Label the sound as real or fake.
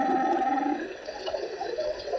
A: fake